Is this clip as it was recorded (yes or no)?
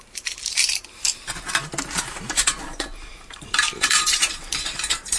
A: no